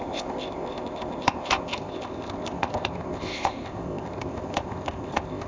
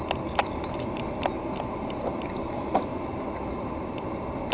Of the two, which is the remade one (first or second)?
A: first